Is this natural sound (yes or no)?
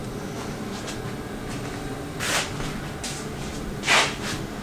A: yes